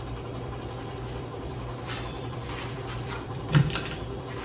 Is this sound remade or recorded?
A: remade